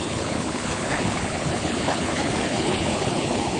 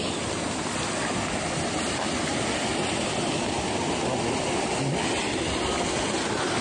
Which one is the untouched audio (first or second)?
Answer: second